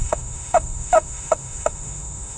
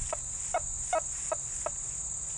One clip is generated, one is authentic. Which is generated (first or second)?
first